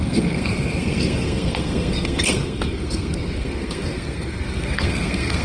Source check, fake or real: fake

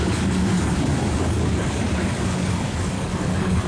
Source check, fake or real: fake